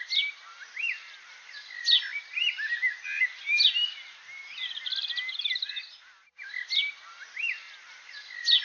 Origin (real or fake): real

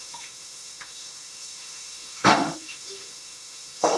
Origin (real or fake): fake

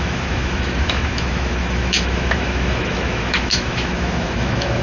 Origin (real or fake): fake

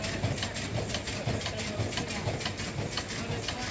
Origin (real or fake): real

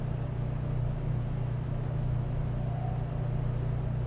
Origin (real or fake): real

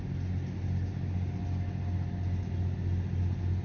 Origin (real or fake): real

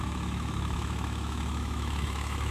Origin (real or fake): fake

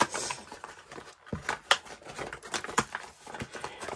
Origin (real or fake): real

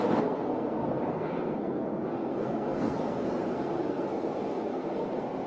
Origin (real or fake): fake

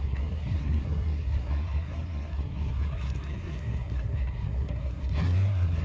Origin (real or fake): fake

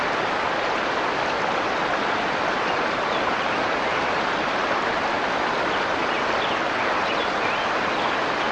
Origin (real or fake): real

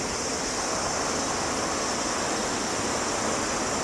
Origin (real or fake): real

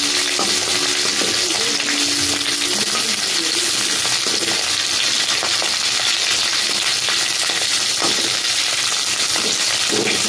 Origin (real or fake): real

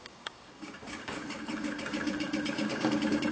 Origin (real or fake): fake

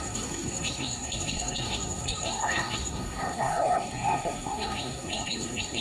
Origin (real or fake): fake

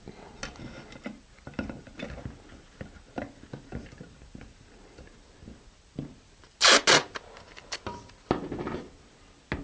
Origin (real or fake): real